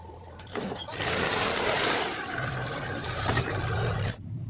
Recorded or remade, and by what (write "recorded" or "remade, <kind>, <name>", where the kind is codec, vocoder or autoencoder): remade, vocoder, BigVGAN v2